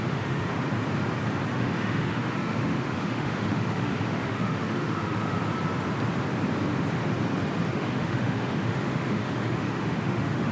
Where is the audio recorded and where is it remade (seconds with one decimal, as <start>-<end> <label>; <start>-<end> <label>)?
0.0-0.5 remade; 0.5-1.5 recorded; 1.5-5.4 remade; 5.4-7.7 recorded; 7.7-10.5 remade